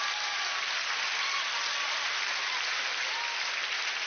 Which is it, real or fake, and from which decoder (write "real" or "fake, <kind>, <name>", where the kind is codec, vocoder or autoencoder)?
real